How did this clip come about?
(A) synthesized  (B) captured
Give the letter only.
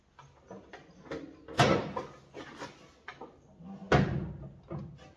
B